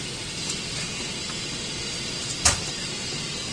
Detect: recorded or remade recorded